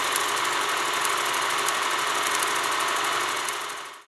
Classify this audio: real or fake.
real